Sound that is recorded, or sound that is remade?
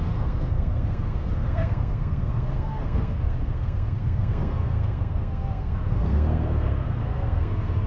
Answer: remade